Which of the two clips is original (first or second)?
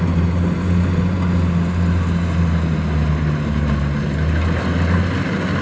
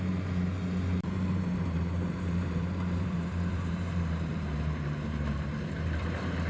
first